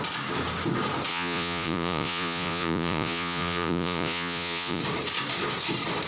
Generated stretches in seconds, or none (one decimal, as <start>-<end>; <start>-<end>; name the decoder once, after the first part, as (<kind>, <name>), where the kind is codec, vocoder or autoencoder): 1.1-4.8 (vocoder, Vocos)